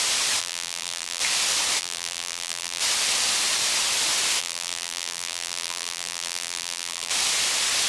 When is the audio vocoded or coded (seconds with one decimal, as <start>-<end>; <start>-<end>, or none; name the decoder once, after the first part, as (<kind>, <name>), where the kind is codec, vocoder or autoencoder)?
0.4-1.2 (vocoder, BigVGAN v2); 1.8-2.8; 4.4-7.1